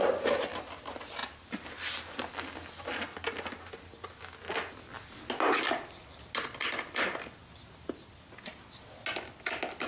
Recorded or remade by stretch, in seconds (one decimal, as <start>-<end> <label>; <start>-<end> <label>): 0.0-1.2 recorded; 1.2-2.3 remade; 2.3-9.9 recorded